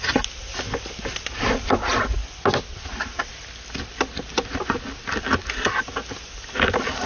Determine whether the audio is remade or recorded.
recorded